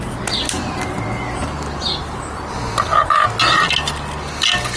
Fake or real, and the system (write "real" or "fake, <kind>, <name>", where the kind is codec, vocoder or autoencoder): real